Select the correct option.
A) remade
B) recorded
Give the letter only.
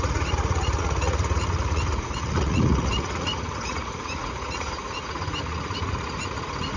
A